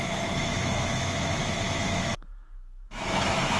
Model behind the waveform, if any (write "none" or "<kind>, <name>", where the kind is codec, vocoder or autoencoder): autoencoder, DAC-VAE